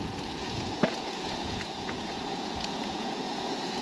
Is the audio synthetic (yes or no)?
yes